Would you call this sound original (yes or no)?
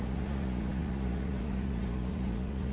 no